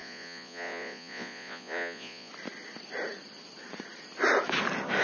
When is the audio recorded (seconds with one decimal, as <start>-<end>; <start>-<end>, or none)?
2.3-5.0

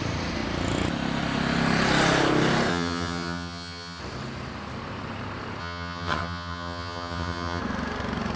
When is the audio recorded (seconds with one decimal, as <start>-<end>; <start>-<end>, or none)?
0.0-2.7; 4.0-5.6; 7.6-8.4